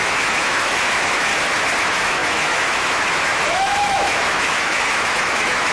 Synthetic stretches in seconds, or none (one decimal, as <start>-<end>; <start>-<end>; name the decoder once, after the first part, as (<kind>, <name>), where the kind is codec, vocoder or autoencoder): 0.0-1.3 (autoencoder, DAC-VAE); 1.8-5.7